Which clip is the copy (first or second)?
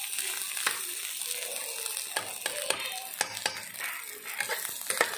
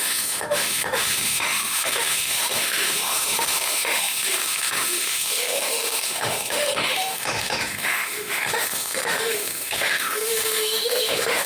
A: second